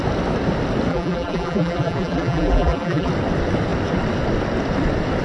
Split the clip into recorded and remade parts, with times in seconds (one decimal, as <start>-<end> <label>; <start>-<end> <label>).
0.0-0.9 recorded; 0.9-3.1 remade; 3.1-5.2 recorded

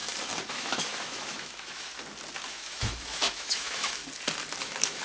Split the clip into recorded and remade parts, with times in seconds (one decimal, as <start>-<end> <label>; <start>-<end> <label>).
0.0-0.5 recorded; 0.5-1.9 remade; 1.9-2.5 recorded; 2.5-4.0 remade; 4.0-4.6 recorded; 4.6-5.0 remade

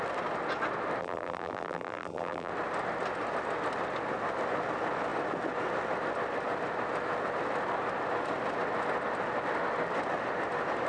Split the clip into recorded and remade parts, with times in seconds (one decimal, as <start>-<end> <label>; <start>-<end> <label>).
0.0-1.0 recorded; 1.0-2.5 remade; 2.5-10.9 recorded

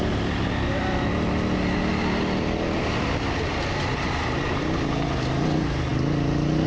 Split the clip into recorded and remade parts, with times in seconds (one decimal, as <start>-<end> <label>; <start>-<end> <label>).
0.0-6.7 recorded